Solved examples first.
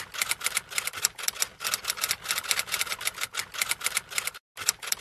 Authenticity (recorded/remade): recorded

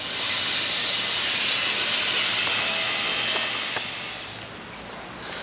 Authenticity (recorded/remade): recorded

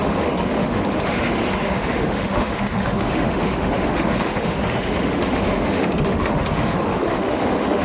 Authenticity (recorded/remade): remade